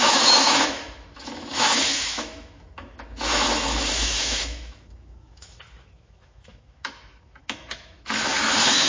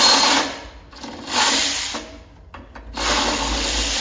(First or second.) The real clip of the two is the second